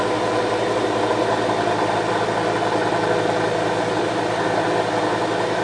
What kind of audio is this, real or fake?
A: real